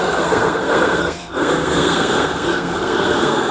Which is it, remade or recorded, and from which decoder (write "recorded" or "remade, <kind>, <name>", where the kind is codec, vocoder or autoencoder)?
remade, codec, SNAC